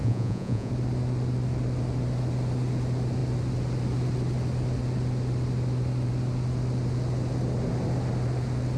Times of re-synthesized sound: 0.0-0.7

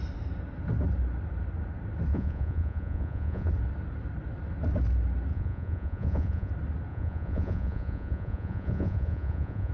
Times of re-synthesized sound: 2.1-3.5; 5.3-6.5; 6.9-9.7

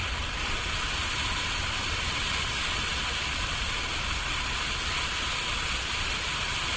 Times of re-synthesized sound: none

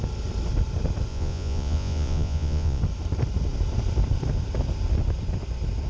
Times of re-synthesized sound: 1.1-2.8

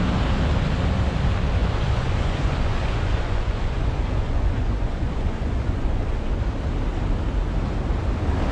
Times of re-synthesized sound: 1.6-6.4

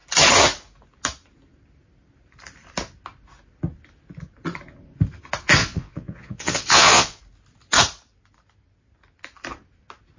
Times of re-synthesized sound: 5.6-7.2

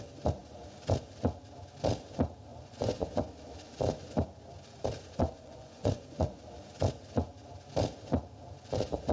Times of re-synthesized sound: 2.5-3.2; 5.2-6.4